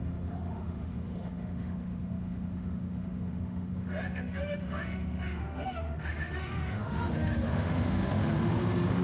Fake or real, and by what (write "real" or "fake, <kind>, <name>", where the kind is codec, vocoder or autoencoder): fake, autoencoder, DAC-VAE